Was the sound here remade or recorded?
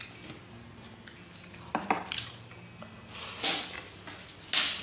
recorded